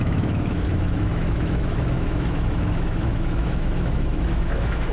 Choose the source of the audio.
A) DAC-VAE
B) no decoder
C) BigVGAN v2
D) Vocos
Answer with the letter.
A